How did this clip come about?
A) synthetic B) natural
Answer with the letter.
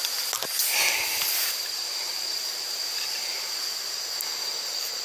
B